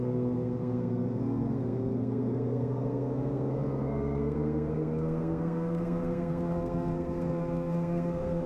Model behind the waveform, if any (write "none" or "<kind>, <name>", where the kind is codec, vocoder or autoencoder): codec, SNAC